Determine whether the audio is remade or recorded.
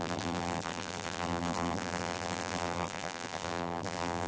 remade